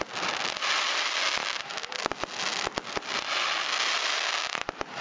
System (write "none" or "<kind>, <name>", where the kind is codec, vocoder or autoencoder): none